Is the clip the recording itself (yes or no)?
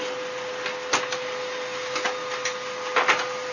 yes